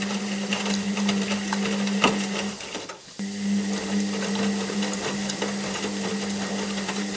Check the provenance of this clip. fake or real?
real